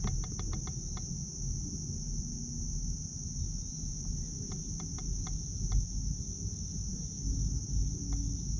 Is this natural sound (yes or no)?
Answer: yes